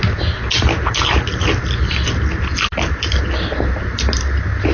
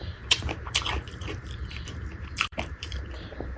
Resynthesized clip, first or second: second